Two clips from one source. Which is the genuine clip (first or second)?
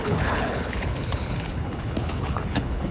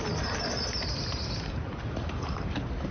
second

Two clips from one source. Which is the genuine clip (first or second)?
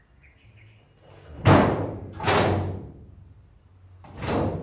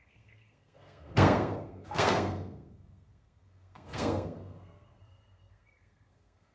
first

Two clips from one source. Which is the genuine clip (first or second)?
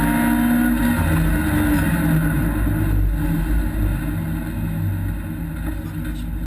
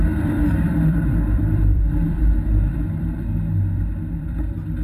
first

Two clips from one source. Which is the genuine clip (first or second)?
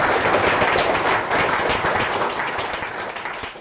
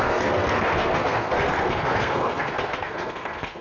first